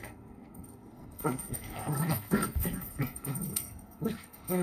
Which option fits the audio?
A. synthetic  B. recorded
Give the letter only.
A